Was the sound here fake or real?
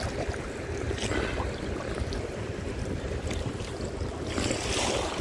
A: real